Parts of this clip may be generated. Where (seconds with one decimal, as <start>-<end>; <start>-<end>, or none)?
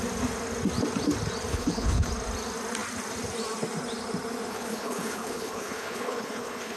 1.5-2.1; 4.5-6.8